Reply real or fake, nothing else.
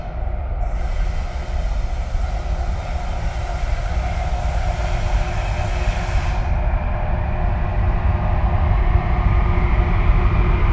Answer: real